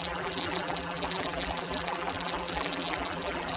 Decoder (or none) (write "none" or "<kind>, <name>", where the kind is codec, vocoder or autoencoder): vocoder, BigVGAN v2